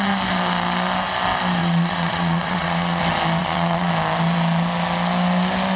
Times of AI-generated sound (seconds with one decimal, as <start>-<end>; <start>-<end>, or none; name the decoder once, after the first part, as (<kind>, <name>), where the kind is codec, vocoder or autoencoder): 1.6-3.0 (vocoder, Vocos); 3.4-3.9